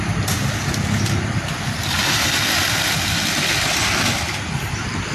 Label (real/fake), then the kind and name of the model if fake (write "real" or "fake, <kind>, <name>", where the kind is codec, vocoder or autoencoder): real